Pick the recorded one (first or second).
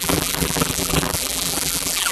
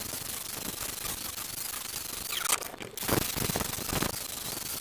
second